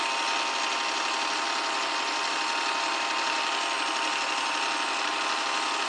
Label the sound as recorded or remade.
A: recorded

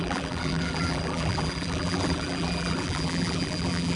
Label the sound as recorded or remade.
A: remade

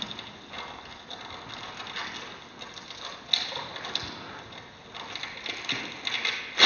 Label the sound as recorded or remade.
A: recorded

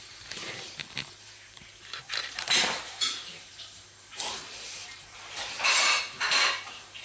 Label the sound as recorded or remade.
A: remade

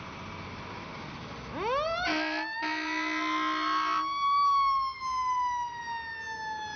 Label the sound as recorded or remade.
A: recorded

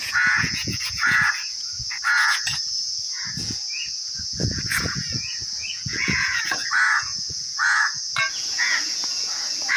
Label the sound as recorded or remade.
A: remade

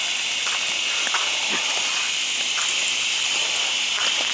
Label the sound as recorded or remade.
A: recorded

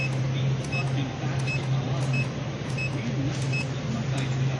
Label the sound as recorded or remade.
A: recorded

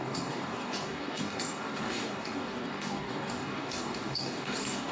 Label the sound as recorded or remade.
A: remade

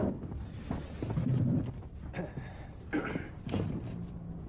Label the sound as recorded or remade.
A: recorded